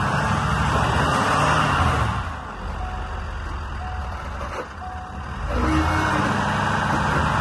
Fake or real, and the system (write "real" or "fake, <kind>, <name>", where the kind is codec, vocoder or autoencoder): real